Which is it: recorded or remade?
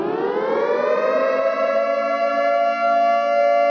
recorded